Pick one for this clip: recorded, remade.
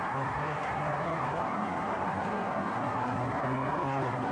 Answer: remade